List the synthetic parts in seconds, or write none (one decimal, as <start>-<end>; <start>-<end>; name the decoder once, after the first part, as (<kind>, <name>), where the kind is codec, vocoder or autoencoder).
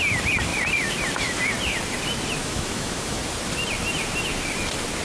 2.4-3.2 (autoencoder, DAC-VAE)